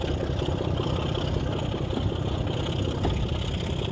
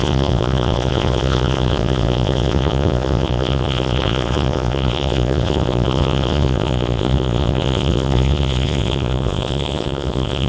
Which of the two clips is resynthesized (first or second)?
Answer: second